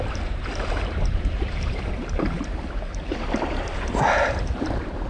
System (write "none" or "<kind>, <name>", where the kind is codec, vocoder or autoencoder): vocoder, BigVGAN v2